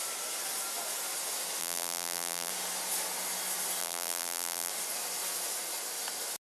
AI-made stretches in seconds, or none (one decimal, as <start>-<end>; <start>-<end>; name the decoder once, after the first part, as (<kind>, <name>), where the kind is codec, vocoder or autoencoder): 1.6-2.5 (vocoder, BigVGAN v2); 3.8-4.7